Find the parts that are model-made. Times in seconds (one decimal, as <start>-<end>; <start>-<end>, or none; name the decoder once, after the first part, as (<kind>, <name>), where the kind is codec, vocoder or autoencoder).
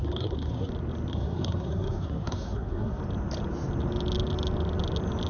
0.0-0.7 (codec, SNAC); 1.1-3.0